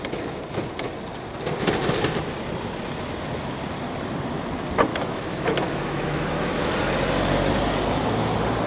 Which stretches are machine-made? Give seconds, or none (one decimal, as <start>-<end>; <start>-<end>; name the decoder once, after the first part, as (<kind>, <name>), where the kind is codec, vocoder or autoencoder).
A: 4.9-6.6 (autoencoder, DAC-VAE)

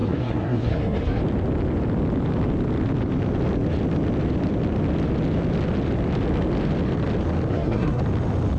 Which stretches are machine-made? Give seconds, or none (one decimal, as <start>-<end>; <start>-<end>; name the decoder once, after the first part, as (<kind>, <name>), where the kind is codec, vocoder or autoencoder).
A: 0.0-1.2 (codec, SNAC); 7.5-8.0

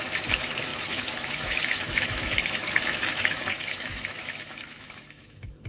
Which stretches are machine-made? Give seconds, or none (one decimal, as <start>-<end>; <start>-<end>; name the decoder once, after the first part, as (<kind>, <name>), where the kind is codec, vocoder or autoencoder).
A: 0.0-5.7 (autoencoder, DAC-VAE)

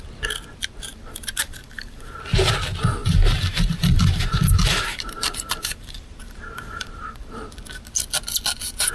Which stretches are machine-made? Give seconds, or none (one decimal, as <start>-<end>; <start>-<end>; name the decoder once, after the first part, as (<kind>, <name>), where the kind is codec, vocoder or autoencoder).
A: 0.9-2.2 (vocoder, BigVGAN v2); 3.0-7.4

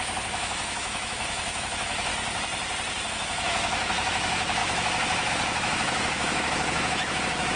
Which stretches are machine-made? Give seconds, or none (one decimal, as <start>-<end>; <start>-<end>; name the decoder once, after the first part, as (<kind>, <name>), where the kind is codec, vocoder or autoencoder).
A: 0.0-2.1 (autoencoder, DAC-VAE); 3.1-7.6

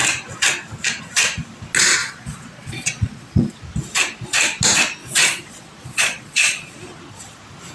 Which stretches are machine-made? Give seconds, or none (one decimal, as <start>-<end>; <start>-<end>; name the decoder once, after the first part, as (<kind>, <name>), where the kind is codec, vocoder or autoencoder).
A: 2.0-3.6 (vocoder, Vocos); 5.0-7.0

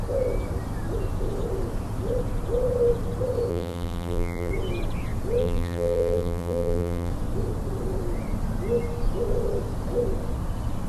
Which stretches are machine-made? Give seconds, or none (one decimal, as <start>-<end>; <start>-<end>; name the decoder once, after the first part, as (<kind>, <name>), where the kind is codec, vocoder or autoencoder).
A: 3.5-4.5 (vocoder, BigVGAN v2); 5.4-7.1